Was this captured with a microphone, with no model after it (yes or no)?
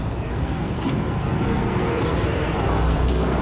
no